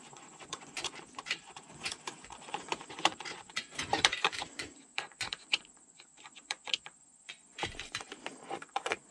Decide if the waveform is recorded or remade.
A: remade